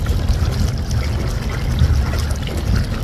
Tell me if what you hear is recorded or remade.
recorded